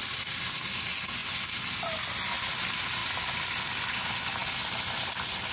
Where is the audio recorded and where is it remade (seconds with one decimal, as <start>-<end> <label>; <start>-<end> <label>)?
0.0-0.5 remade; 0.5-5.5 recorded